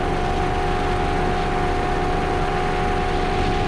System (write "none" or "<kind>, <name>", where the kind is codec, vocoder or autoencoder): none